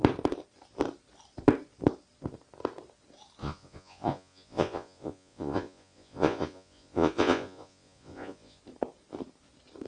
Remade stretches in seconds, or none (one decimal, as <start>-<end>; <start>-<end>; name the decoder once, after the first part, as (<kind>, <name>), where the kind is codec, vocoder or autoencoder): 3.4-8.6 (vocoder, Vocos)